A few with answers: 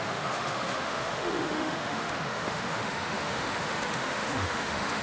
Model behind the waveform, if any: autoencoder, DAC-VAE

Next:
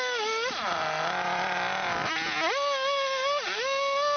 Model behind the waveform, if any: none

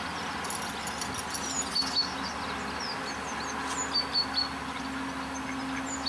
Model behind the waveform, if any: none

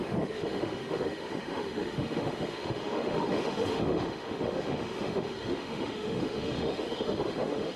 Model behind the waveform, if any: autoencoder, DAC-VAE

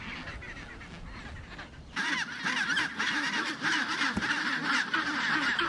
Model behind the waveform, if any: none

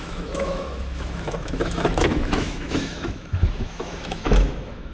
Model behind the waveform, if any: autoencoder, DAC-VAE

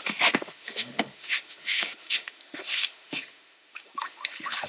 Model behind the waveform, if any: autoencoder, DAC-VAE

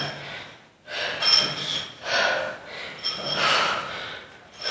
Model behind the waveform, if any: none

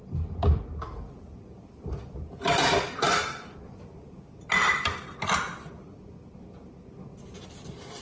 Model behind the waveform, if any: none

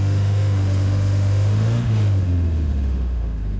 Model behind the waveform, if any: autoencoder, DAC-VAE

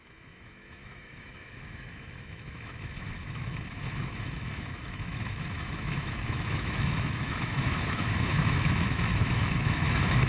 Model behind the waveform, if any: autoencoder, DAC-VAE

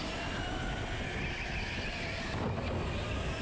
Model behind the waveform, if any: none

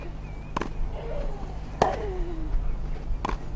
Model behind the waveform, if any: none